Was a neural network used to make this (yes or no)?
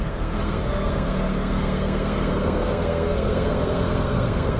yes